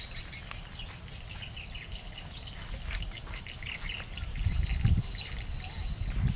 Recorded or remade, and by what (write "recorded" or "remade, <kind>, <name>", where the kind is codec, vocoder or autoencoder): recorded